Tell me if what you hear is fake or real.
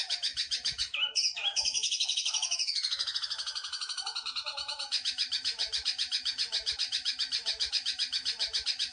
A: fake